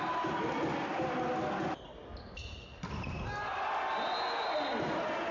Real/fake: real